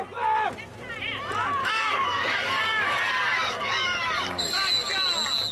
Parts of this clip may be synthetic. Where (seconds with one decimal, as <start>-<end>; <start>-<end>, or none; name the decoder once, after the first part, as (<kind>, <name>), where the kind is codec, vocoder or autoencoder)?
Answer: 1.6-4.9 (codec, DAC)